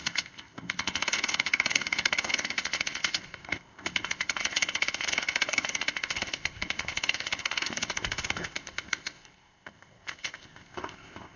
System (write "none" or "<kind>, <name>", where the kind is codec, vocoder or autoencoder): codec, ZipCodec